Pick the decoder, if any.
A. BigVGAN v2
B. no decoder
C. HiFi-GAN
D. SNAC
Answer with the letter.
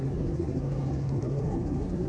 D